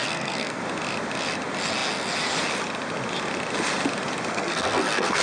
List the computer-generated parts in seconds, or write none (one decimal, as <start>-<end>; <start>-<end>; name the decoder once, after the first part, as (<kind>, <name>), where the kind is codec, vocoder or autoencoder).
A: 0.0-0.6 (codec, SNAC); 4.3-5.2